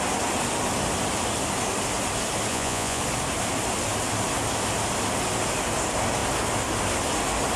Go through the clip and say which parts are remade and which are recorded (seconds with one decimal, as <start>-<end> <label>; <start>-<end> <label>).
0.0-2.5 recorded; 2.5-3.0 remade; 3.0-7.6 recorded